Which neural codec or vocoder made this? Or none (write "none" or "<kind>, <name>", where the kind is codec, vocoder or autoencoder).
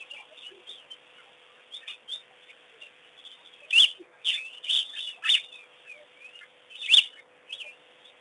none